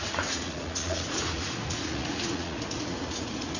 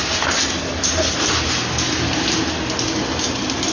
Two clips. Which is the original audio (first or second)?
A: second